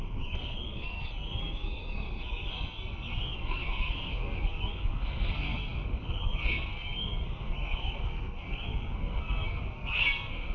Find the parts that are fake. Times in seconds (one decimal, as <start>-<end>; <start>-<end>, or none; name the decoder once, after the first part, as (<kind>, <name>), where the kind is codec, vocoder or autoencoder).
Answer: 0.0-10.5 (codec, SNAC)